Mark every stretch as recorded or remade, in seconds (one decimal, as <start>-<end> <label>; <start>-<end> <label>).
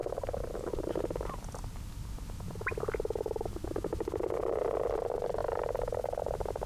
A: 0.0-0.9 remade; 0.9-6.7 recorded